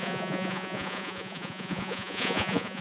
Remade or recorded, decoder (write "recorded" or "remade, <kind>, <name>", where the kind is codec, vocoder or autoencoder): remade, vocoder, Vocos